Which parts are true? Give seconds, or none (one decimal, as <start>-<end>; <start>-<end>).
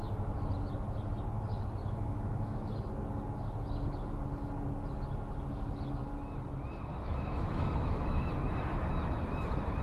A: 0.0-1.8; 2.7-6.9; 8.3-9.8